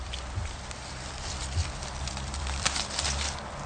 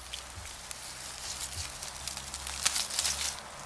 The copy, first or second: first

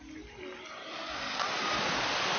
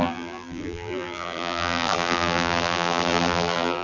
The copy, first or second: second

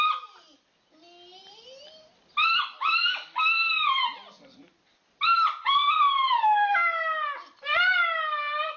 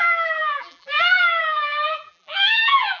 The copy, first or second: second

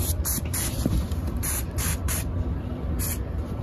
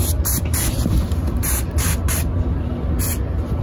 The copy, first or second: first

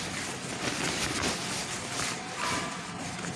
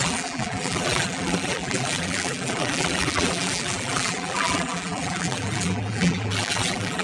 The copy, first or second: second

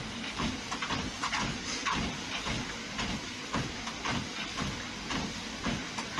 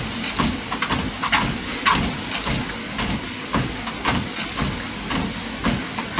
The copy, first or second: first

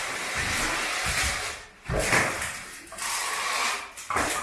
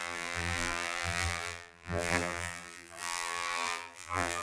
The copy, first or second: second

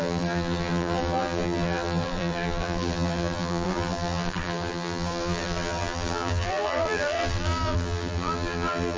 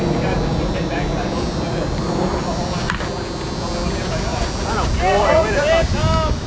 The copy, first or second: first